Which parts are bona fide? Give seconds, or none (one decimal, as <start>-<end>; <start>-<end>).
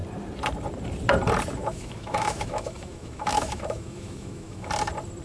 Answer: 0.0-1.6; 4.7-5.2